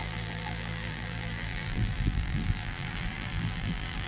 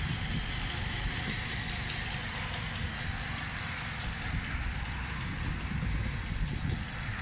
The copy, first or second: first